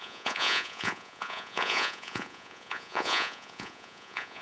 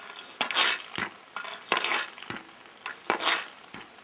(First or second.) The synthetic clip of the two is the first